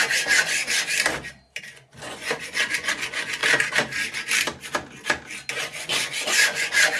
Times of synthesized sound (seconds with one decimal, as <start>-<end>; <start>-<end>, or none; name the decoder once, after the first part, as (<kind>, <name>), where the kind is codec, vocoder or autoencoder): 0.0-0.6 (vocoder, Vocos); 1.6-3.4; 5.6-7.0

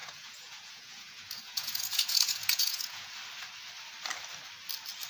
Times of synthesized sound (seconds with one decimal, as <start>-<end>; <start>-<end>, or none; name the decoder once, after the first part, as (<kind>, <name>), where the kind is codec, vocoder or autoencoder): 0.0-3.1 (vocoder, Vocos)

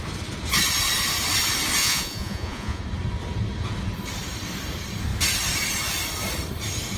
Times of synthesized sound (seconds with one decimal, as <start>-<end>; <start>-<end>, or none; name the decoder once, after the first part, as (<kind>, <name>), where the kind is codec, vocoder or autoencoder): 1.8-2.8 (vocoder, Vocos)

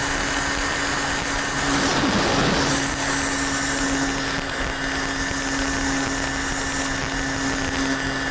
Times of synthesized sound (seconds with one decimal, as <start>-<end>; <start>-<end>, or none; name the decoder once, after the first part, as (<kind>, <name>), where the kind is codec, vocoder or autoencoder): none

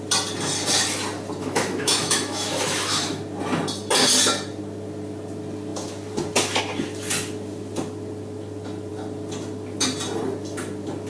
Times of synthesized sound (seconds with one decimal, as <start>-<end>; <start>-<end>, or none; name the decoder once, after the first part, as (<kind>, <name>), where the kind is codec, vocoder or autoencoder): 1.4-3.2 (autoencoder, DAC-VAE)